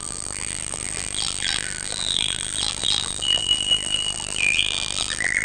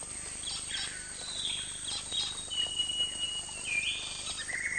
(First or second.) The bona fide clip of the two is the second